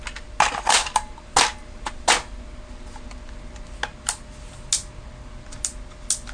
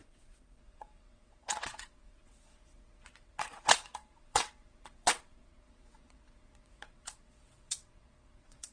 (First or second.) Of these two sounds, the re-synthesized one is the second